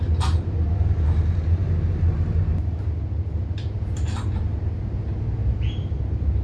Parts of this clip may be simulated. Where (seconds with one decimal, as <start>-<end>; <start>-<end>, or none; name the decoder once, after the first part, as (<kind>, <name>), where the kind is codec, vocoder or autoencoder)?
none

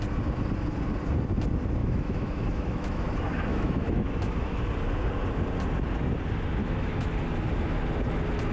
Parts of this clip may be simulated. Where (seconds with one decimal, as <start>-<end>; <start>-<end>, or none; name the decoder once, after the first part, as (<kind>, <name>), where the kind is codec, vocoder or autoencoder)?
1.8-3.0 (autoencoder, DAC-VAE); 3.5-4.7; 6.6-7.1

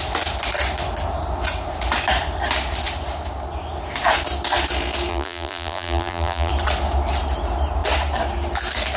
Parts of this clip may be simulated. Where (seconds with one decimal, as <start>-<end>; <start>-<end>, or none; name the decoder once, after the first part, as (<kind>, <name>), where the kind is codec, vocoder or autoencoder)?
5.1-6.5 (vocoder, BigVGAN v2)

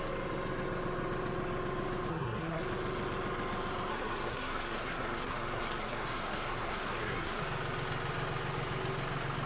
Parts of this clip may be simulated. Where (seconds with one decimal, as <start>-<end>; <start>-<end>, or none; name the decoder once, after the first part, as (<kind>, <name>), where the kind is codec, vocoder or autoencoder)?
2.1-2.6 (codec, SNAC); 3.9-7.4

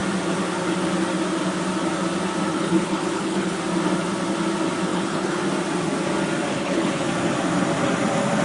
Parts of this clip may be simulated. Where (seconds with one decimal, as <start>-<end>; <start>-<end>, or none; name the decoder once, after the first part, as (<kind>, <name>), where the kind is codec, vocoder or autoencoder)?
2.5-3.6 (codec, HILCodec); 4.9-5.4; 6.5-7.0